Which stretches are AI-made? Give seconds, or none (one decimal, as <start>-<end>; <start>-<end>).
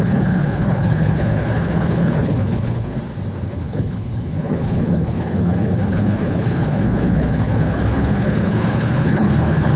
0.0-3.0; 3.5-9.8